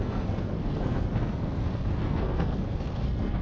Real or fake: fake